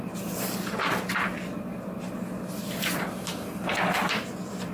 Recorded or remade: recorded